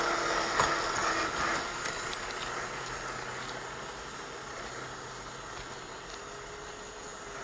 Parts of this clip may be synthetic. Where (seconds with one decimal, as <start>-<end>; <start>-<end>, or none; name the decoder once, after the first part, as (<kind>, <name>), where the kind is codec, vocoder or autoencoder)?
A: none